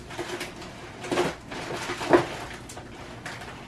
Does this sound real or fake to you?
real